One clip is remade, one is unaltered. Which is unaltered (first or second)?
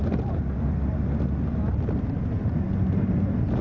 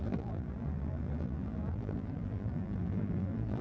first